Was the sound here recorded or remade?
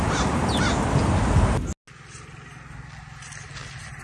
recorded